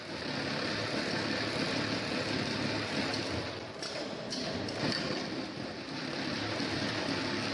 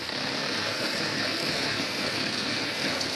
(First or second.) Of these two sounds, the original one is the first